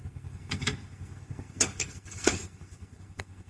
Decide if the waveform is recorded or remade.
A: remade